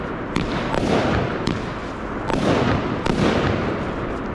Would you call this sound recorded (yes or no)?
yes